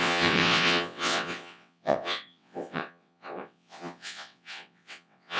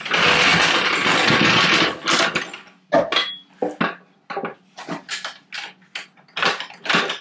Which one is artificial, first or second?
first